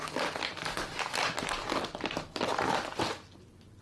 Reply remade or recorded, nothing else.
recorded